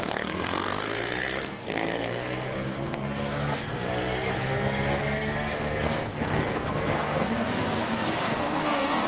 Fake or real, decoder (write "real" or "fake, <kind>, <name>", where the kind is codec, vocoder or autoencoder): fake, codec, SNAC